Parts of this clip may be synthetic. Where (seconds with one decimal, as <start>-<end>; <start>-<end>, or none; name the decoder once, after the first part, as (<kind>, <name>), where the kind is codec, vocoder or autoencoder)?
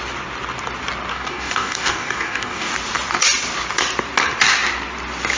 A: 1.1-2.7 (codec, DAC)